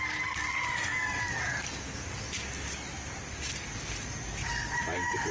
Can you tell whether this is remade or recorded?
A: recorded